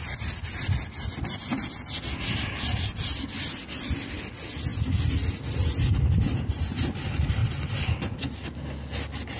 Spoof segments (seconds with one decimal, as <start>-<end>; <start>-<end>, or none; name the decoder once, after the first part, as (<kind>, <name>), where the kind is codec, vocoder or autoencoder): none